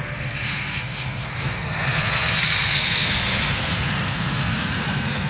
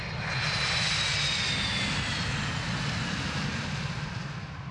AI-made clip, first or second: first